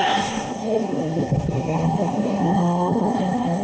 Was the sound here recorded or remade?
remade